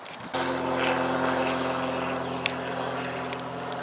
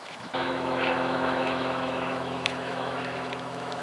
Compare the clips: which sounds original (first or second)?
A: first